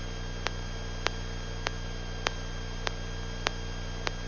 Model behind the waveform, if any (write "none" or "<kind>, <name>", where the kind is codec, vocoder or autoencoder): none